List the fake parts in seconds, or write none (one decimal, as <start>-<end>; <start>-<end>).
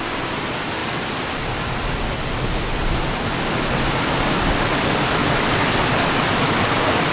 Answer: none